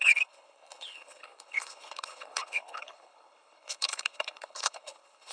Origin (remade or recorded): remade